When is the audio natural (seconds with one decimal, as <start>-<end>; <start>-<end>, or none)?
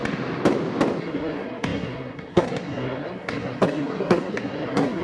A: 0.0-1.0